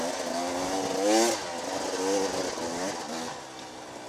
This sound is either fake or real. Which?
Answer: real